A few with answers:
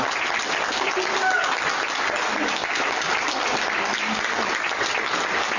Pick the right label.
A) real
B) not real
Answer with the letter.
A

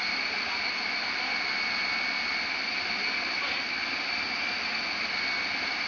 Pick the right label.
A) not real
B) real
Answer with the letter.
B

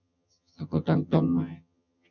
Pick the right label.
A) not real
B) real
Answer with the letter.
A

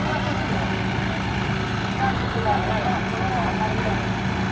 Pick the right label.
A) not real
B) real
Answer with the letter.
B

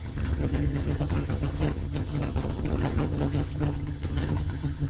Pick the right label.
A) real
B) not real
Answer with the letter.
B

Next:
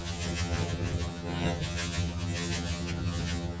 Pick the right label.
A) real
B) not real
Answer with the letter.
B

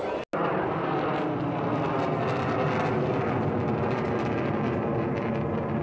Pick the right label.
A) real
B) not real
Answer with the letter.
A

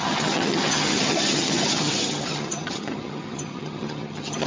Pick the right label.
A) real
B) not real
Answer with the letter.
B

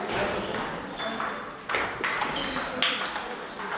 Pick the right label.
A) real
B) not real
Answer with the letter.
A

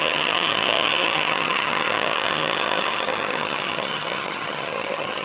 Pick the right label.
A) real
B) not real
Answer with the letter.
B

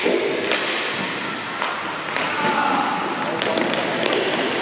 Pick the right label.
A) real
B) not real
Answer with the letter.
A